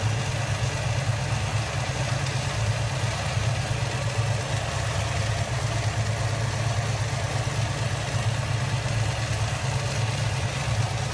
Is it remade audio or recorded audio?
recorded